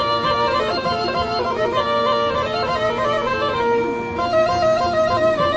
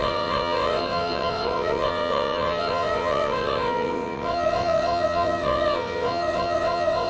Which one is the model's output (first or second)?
second